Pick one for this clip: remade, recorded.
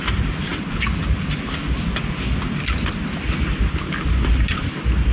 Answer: recorded